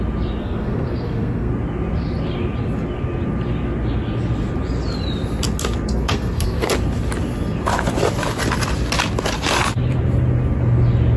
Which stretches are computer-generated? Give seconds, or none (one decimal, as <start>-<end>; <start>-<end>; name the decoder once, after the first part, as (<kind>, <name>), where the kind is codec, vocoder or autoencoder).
0.4-1.5 (codec, SNAC); 5.9-6.7